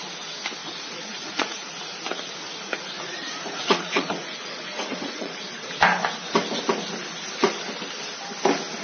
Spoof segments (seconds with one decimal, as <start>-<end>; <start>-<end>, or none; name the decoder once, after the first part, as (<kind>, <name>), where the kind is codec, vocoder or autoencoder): 0.6-1.7 (vocoder, Vocos); 2.1-5.8